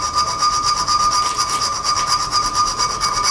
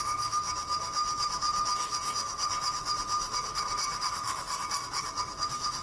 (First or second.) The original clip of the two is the first